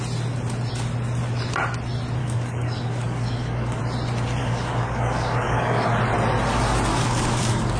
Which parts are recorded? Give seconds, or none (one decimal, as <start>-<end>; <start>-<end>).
0.0-2.2; 3.8-4.4; 6.0-6.9

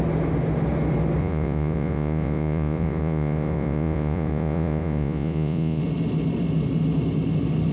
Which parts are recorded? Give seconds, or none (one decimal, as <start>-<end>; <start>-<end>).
0.0-1.2; 5.8-7.7

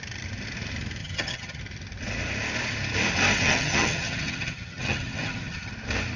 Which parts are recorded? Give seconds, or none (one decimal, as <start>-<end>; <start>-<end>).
0.0-1.0; 1.6-3.4; 5.7-6.2

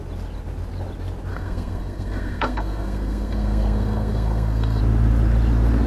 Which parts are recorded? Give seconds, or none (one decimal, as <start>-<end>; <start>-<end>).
0.0-1.3; 4.8-5.9

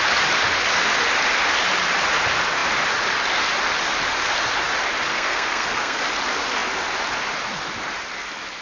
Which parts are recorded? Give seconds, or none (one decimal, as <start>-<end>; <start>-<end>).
0.0-5.1; 6.0-8.6

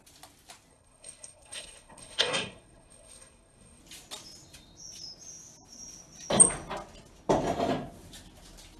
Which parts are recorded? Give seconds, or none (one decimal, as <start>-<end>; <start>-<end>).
0.0-0.7; 3.8-8.8

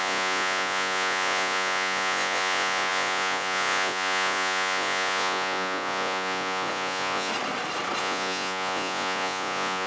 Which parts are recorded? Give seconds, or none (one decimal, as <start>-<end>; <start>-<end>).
7.3-8.0

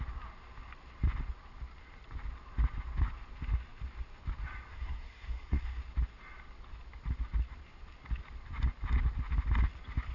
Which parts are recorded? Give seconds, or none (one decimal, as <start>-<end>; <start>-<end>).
0.0-4.7; 5.8-10.1